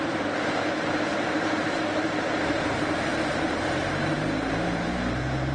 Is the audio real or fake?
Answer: fake